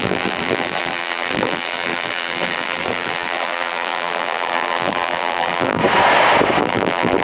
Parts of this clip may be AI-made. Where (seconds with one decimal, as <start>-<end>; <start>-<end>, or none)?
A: 0.0-5.8; 6.6-7.2